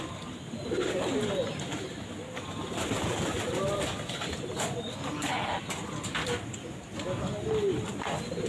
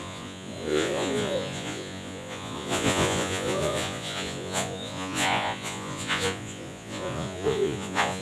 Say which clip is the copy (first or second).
second